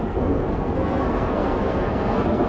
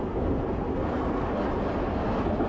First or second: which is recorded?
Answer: second